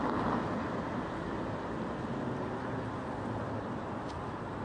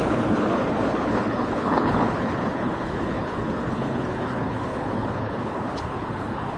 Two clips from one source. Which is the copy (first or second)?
second